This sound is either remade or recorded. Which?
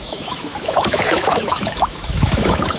remade